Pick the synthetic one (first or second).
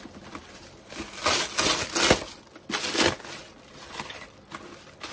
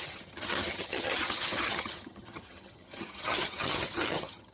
second